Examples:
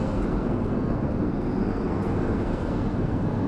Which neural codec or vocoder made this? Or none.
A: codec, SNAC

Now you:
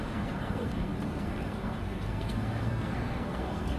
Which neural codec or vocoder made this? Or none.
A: codec, SNAC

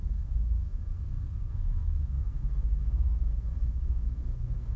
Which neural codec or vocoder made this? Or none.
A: codec, SNAC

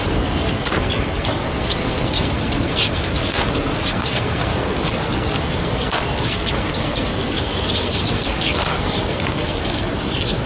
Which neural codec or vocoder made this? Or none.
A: codec, SNAC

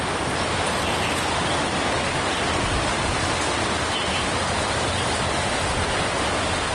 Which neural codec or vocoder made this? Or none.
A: none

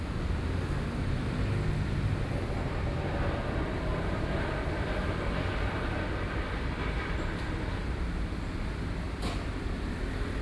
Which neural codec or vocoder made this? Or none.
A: none